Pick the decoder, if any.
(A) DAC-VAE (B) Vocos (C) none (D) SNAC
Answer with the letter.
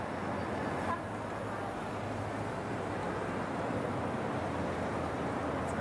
C